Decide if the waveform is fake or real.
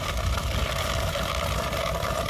real